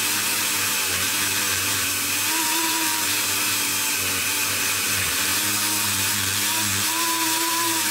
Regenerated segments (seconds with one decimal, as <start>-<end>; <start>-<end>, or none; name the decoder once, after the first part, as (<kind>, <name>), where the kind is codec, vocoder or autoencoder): 0.0-3.7 (vocoder, BigVGAN v2); 4.5-5.3; 7.0-7.9